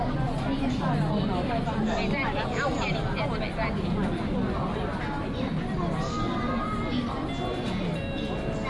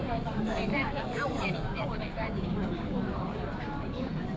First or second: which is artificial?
second